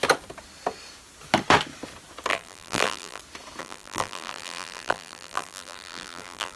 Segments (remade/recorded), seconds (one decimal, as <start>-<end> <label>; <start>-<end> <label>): 0.0-2.3 recorded; 2.3-3.2 remade; 3.2-3.6 recorded; 3.6-6.6 remade